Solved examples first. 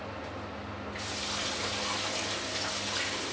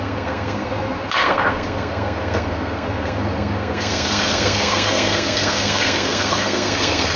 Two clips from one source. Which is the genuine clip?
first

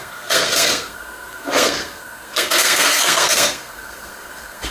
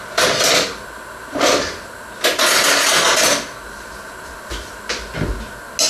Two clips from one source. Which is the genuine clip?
second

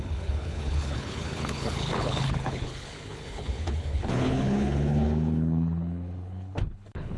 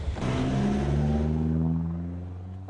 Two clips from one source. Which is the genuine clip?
second